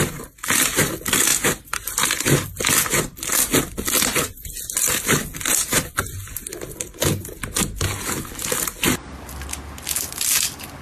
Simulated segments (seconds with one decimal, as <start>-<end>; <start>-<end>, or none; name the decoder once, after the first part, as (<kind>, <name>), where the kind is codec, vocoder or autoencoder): none